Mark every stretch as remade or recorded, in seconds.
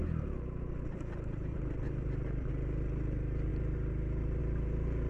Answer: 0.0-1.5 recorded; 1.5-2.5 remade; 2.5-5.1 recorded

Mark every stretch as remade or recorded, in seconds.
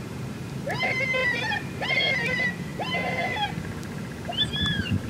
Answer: 0.0-2.7 remade; 2.7-4.5 recorded; 4.5-5.1 remade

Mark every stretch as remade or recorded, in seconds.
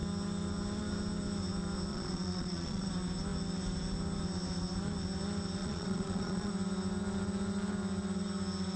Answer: 0.0-1.9 recorded; 1.9-2.9 remade; 2.9-5.6 recorded; 5.6-6.5 remade; 6.5-8.8 recorded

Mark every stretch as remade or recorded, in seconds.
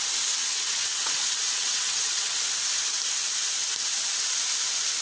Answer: 0.0-0.4 recorded; 0.4-2.4 remade; 2.4-5.0 recorded